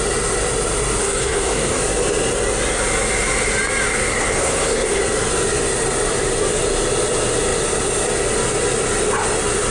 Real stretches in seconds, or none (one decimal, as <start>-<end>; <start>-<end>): 0.0-1.0; 1.8-4.1; 5.0-9.7